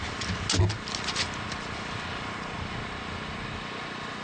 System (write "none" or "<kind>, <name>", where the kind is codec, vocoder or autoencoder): none